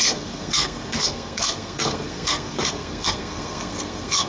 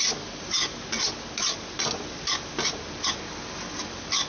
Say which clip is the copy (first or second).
first